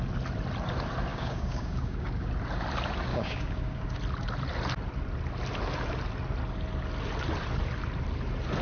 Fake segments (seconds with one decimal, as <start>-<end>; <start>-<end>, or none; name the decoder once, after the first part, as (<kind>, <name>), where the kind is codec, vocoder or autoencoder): 1.1-2.3 (codec, DAC); 3.1-4.0